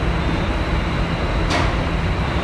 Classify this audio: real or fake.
real